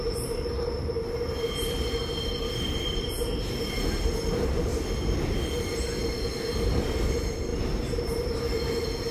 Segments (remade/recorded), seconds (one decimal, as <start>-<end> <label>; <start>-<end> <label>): 0.0-4.7 remade; 4.7-5.3 recorded; 5.3-9.1 remade